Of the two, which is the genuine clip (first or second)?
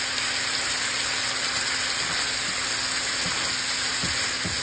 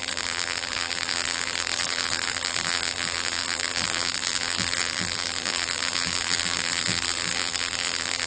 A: first